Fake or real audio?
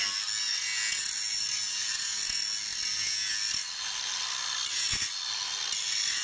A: real